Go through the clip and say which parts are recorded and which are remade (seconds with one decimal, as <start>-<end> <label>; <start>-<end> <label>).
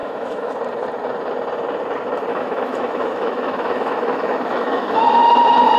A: 0.0-0.5 remade; 0.5-2.3 recorded; 2.3-5.0 remade; 5.0-5.8 recorded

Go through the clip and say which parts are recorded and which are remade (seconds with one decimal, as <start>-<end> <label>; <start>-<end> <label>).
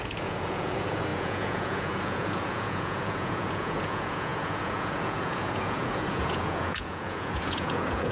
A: 0.0-8.1 remade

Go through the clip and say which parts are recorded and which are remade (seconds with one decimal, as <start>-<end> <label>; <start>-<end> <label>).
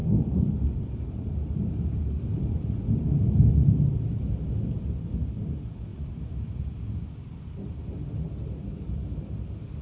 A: 0.0-1.8 remade; 1.8-2.3 recorded; 2.3-3.5 remade; 3.5-5.9 recorded; 5.9-6.6 remade; 6.6-9.8 recorded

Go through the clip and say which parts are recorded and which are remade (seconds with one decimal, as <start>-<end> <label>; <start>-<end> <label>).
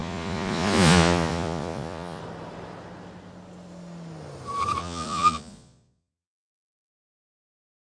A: 0.0-2.2 remade; 2.2-4.8 recorded; 4.8-6.9 remade; 6.9-7.9 recorded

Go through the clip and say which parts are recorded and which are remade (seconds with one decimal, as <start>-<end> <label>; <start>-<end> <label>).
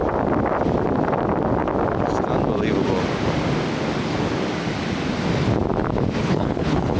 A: 0.0-6.2 recorded; 6.2-7.0 remade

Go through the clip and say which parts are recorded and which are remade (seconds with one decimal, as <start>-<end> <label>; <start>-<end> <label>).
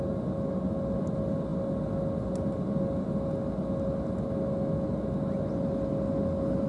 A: 0.0-6.7 recorded